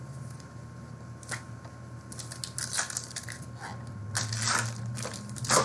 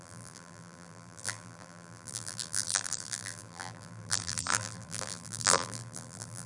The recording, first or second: first